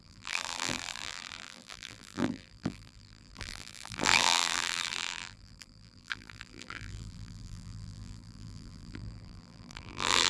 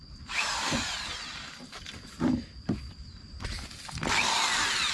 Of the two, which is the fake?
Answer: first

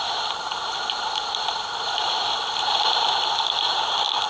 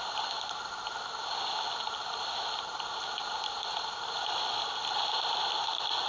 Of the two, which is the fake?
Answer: first